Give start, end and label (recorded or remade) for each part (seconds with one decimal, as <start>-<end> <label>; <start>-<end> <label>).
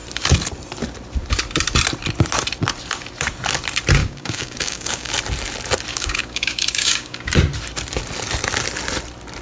0.0-4.0 recorded; 4.0-5.1 remade; 5.1-5.9 recorded; 5.9-7.3 remade; 7.3-9.4 recorded